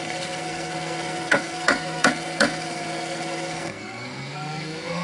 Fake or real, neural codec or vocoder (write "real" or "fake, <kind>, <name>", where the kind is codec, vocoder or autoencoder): fake, codec, SNAC